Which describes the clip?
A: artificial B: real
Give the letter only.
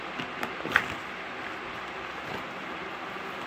B